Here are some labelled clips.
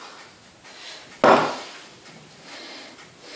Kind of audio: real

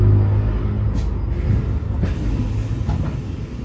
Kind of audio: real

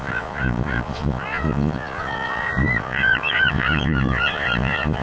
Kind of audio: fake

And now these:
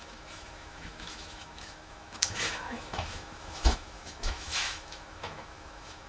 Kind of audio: fake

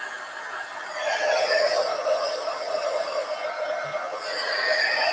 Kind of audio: real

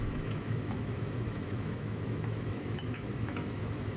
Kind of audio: fake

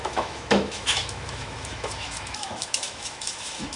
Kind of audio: fake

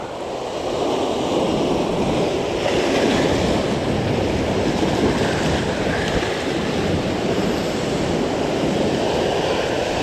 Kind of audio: real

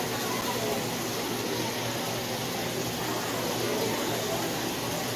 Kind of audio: real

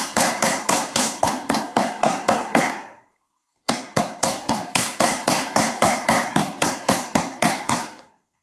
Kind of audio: fake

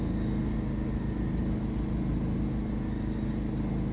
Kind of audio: real